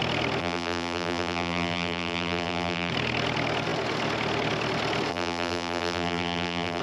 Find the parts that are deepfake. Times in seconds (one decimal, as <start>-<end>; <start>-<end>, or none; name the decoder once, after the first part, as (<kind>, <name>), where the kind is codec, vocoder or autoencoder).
0.4-2.9 (vocoder, BigVGAN v2); 5.1-6.8